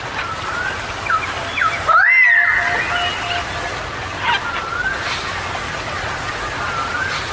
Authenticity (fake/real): real